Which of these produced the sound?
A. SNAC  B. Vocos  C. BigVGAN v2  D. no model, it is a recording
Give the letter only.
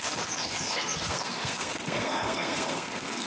A